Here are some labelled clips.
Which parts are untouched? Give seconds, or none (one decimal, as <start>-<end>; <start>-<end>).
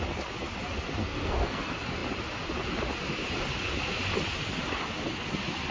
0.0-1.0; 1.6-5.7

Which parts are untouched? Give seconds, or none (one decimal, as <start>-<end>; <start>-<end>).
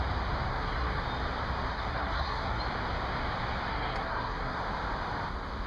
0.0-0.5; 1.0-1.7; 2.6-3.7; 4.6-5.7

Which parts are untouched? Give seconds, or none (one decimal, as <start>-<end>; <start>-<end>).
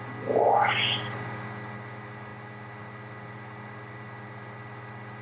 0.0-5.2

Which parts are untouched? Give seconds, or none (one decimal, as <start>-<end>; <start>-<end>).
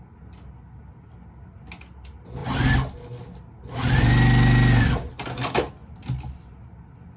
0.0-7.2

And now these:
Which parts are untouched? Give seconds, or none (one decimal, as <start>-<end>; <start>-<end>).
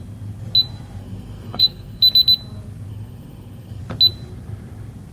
0.0-1.0; 2.0-2.9; 3.8-5.1